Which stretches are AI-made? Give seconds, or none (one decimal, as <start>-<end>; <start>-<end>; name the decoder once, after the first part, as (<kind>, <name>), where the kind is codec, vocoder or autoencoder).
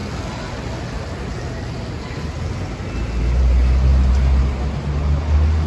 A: none